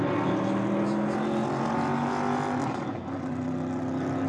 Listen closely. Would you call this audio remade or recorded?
recorded